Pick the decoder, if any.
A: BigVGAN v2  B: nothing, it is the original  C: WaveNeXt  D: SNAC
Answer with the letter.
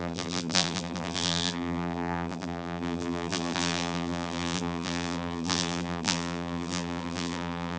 A